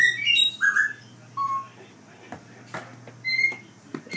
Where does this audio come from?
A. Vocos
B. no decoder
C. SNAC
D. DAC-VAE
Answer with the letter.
B